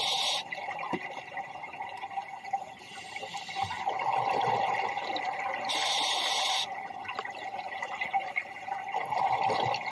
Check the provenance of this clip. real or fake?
real